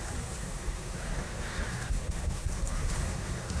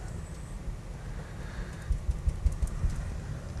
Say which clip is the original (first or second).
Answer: second